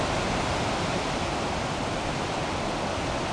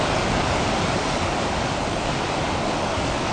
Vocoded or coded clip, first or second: second